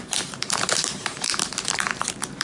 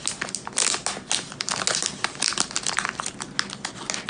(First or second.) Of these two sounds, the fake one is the first